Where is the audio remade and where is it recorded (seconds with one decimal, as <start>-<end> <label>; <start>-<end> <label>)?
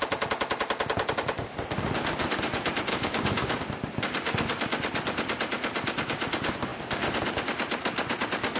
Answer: 0.0-2.9 recorded; 2.9-3.6 remade; 3.6-8.6 recorded